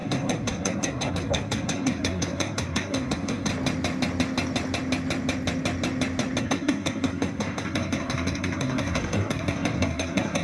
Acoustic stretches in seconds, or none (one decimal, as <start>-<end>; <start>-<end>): 3.5-6.4